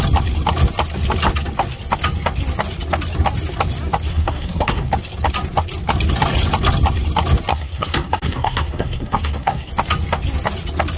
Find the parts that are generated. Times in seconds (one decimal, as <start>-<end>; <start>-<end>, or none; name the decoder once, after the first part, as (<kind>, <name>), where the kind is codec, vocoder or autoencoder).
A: 4.1-4.9 (codec, SNAC); 7.5-9.7